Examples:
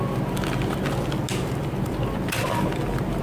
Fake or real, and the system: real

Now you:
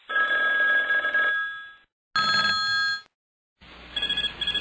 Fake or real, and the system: real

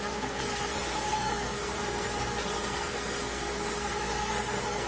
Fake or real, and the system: fake, codec, SNAC